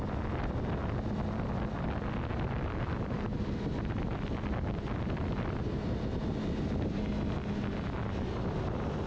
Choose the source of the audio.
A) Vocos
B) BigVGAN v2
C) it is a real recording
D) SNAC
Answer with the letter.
C